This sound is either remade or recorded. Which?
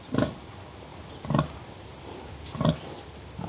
recorded